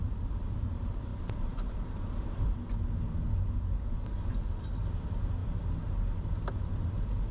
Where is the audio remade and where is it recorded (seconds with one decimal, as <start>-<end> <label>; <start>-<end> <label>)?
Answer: 0.0-1.1 recorded; 1.1-2.7 remade; 2.7-7.3 recorded